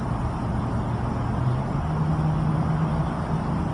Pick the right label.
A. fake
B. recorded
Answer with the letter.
B